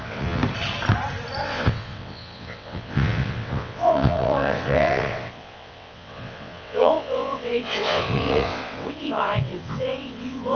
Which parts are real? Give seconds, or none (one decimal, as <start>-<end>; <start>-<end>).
0.4-1.4